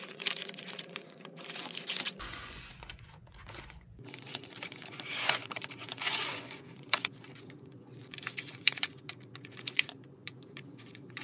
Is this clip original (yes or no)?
no